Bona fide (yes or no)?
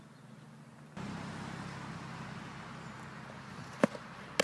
yes